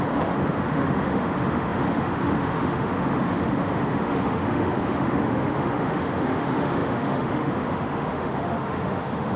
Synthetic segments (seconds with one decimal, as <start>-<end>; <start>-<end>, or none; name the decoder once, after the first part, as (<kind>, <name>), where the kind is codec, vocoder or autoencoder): 0.0-9.4 (autoencoder, DAC-VAE)